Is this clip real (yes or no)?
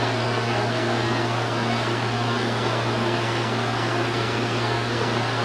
no